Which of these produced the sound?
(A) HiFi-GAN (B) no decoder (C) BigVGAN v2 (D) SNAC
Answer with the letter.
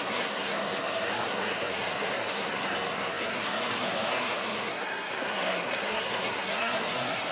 D